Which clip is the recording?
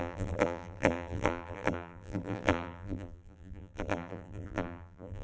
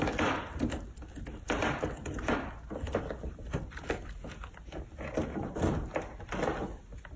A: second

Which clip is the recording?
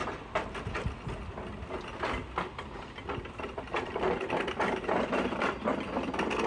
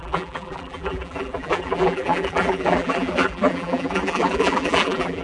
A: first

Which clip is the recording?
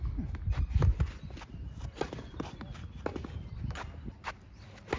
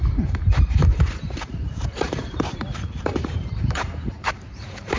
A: first